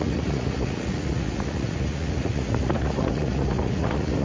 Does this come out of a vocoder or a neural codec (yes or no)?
yes